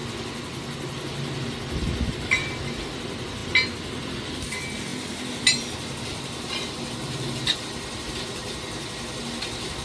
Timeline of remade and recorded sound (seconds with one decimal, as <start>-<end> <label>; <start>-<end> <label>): 0.0-2.1 recorded; 2.1-3.4 remade; 3.4-4.2 recorded; 4.2-4.9 remade; 4.9-6.5 recorded; 6.5-9.8 remade